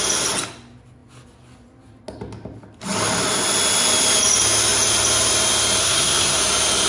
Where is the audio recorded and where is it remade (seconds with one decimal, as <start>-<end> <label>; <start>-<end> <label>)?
0.0-5.8 recorded; 5.8-6.4 remade; 6.4-6.9 recorded